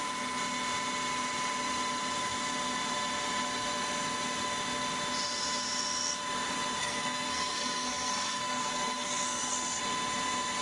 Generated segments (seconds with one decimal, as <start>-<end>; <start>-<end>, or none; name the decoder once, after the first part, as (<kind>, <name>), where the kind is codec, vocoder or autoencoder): 6.8-9.8 (codec, SNAC)

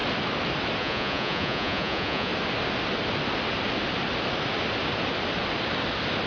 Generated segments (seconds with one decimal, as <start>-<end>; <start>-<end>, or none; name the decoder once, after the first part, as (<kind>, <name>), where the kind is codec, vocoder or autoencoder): 0.8-2.3 (vocoder, Vocos)

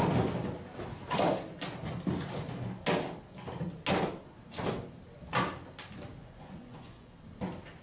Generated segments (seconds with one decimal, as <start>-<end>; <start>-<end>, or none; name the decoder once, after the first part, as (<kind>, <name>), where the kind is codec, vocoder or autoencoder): 6.2-7.2 (vocoder, Vocos)

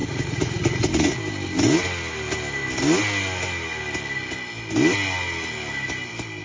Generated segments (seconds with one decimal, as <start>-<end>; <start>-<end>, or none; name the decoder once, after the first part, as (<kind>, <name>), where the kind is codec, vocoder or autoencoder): 0.0-1.2 (vocoder, Vocos)

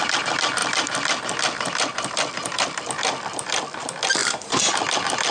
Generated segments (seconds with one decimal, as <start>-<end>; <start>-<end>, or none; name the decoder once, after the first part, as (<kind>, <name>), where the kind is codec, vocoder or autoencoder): 0.6-3.8 (vocoder, BigVGAN v2); 4.2-4.7

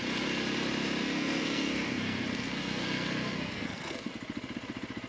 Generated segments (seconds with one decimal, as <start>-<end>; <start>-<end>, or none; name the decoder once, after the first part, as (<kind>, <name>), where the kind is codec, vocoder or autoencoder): 1.0-4.1 (codec, SNAC)